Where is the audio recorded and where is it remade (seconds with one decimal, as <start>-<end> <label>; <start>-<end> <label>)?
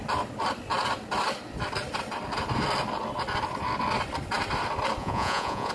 0.0-5.0 recorded; 5.0-5.7 remade